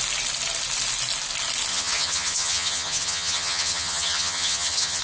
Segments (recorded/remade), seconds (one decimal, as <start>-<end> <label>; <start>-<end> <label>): 0.0-1.7 recorded; 1.7-5.0 remade

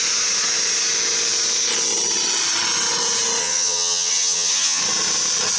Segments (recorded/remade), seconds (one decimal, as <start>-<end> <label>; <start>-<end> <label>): 0.0-3.4 recorded; 3.4-4.8 remade; 4.8-5.6 recorded

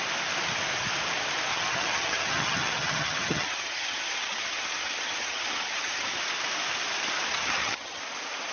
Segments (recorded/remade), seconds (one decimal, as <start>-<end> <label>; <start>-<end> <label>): 0.0-1.5 recorded; 1.5-6.2 remade; 6.2-7.3 recorded; 7.3-8.0 remade; 8.0-8.5 recorded